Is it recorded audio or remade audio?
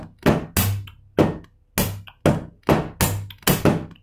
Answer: recorded